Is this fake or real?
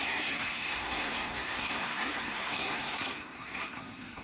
fake